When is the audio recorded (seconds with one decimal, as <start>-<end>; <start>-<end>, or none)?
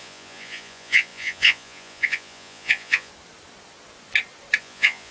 3.1-4.6